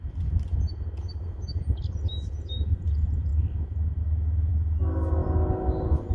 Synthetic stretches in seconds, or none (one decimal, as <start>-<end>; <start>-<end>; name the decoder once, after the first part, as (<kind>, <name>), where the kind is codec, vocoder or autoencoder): none